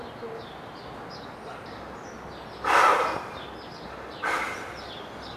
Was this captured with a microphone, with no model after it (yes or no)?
yes